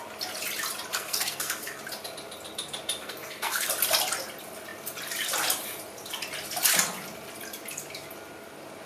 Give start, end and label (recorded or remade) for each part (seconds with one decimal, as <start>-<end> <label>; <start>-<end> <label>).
0.0-0.9 recorded; 0.9-1.8 remade; 1.8-3.0 recorded; 3.0-3.7 remade; 3.7-8.9 recorded